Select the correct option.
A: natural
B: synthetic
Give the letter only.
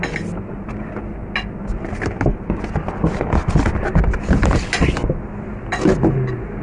A